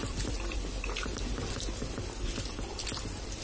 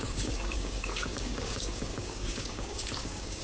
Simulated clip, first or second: second